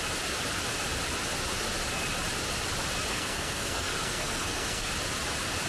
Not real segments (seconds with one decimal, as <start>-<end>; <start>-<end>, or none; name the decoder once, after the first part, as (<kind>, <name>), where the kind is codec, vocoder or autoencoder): 3.1-4.9 (codec, SNAC)